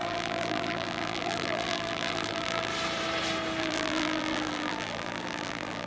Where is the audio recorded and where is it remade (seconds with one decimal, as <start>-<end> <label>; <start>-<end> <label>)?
0.0-2.7 remade; 2.7-3.6 recorded; 3.6-5.9 remade